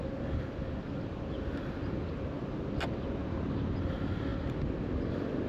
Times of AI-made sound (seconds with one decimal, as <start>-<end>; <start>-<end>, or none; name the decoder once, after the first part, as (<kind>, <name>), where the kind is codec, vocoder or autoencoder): none